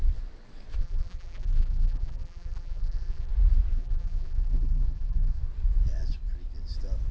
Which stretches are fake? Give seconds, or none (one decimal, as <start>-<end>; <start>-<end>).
0.8-3.3; 3.7-5.4